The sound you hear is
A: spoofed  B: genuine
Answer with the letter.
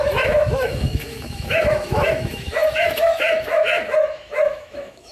A